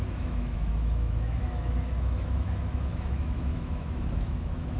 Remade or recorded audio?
remade